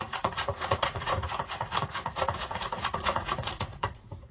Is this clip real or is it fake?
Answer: fake